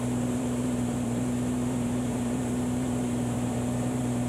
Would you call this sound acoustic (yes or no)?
no